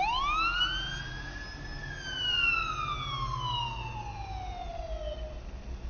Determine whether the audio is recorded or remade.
recorded